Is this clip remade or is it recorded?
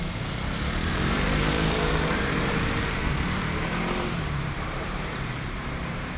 remade